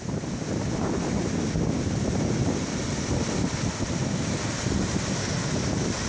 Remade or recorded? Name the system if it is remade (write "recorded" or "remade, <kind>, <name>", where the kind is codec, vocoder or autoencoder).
recorded